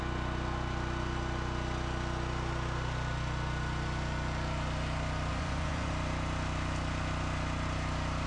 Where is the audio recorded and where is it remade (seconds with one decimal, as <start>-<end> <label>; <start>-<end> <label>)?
0.0-5.3 recorded; 5.3-5.9 remade; 5.9-8.3 recorded